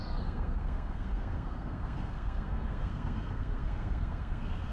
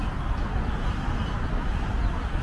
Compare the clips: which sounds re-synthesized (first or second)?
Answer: first